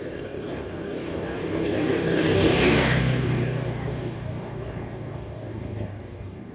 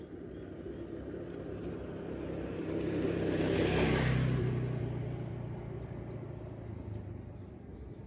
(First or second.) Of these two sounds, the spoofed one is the first